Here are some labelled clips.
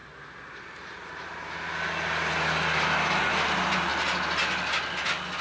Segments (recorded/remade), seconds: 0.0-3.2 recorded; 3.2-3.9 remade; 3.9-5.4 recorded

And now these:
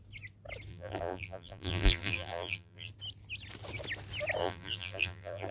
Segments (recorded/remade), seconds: 0.0-0.7 recorded; 0.7-2.9 remade; 2.9-4.4 recorded; 4.4-5.5 remade

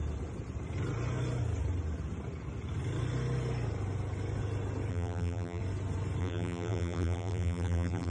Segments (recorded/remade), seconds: 0.0-4.9 recorded; 4.9-5.6 remade; 5.6-6.2 recorded; 6.2-8.1 remade

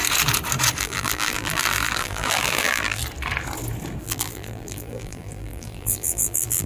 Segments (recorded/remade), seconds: 0.0-0.8 recorded; 0.8-3.0 remade; 3.0-4.0 recorded; 4.0-6.7 remade